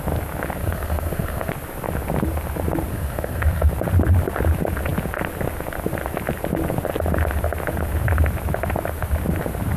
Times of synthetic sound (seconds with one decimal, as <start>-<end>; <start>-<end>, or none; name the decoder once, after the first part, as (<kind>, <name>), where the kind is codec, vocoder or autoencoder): 0.6-1.5 (codec, SNAC); 2.9-3.7